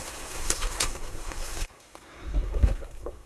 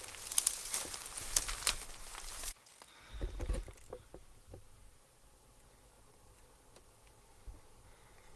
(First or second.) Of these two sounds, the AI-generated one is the first